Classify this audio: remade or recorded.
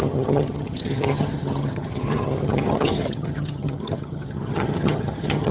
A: remade